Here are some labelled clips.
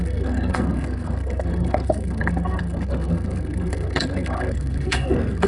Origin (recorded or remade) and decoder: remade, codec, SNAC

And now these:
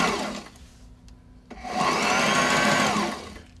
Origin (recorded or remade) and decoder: recorded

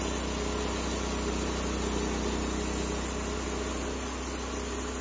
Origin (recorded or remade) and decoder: recorded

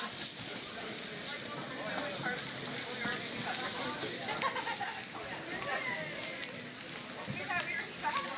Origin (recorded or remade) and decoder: recorded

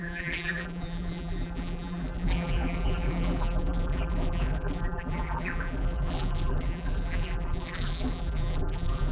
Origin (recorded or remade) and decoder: remade, vocoder, BigVGAN v2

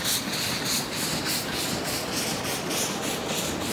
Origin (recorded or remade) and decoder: recorded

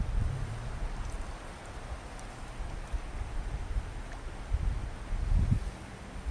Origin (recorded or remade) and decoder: recorded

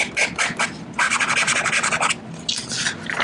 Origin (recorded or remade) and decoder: recorded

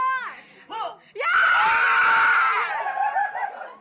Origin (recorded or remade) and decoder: recorded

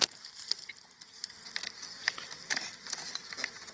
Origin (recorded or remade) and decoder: recorded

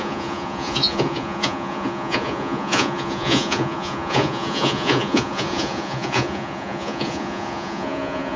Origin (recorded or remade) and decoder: remade, vocoder, Vocos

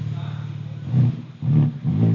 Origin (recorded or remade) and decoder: recorded